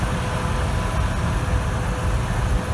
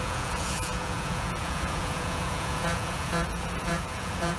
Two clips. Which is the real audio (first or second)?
first